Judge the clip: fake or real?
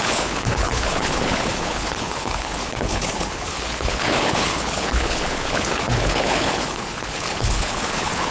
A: fake